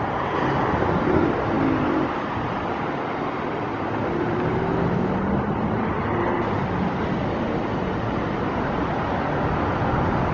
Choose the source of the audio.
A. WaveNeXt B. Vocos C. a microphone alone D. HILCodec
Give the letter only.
C